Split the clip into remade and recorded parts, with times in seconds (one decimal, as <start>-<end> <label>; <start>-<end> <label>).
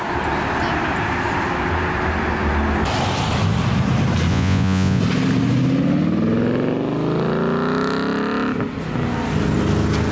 0.0-4.3 recorded; 4.3-5.0 remade; 5.0-10.1 recorded